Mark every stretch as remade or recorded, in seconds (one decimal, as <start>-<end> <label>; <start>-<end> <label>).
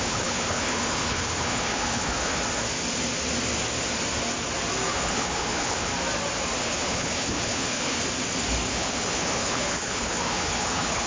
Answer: 0.0-2.4 remade; 2.4-4.9 recorded; 4.9-5.9 remade; 5.9-6.6 recorded; 6.6-8.0 remade; 8.0-8.7 recorded; 8.7-11.1 remade